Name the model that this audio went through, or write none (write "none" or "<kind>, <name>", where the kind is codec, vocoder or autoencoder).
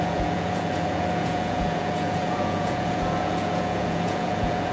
vocoder, Vocos